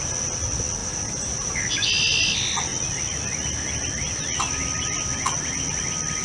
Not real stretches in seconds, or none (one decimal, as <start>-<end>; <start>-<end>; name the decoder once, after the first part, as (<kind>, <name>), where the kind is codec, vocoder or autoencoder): 0.8-1.5 (vocoder, BigVGAN v2)